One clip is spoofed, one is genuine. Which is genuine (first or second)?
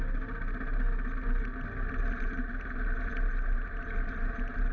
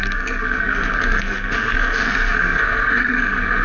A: first